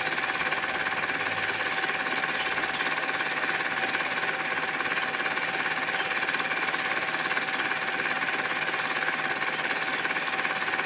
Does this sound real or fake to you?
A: real